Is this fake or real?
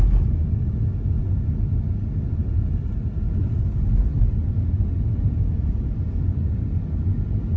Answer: real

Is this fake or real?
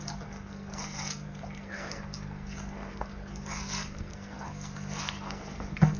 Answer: fake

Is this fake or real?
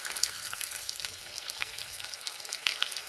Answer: fake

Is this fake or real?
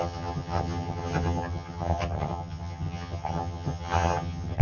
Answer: fake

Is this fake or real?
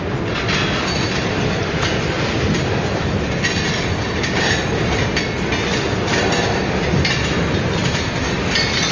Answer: real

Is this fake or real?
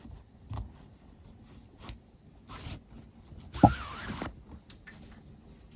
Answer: real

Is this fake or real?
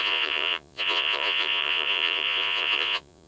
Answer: fake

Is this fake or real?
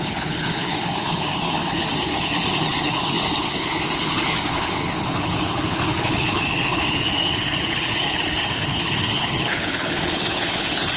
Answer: fake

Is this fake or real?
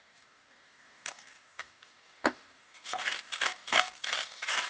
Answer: fake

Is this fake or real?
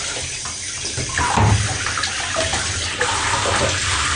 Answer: real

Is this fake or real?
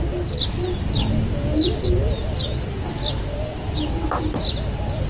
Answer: real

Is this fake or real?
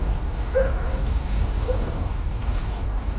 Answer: fake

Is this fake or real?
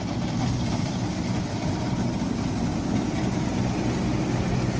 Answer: real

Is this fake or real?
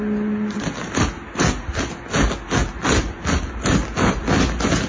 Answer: real